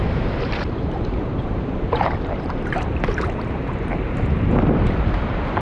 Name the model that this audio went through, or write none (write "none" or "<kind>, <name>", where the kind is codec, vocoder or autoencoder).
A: vocoder, BigVGAN v2